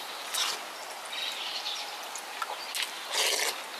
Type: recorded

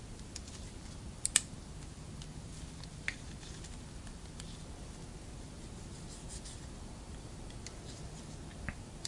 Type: recorded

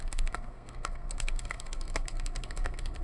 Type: remade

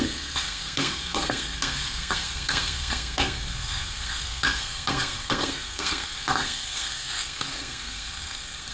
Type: remade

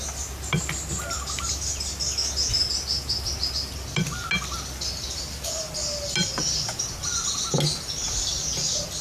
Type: recorded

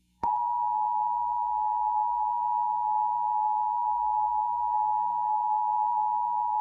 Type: remade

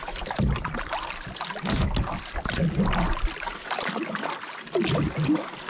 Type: recorded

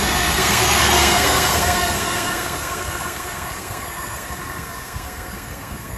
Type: remade